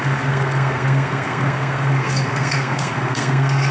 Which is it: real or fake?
fake